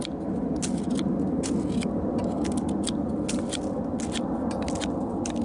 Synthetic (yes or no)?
no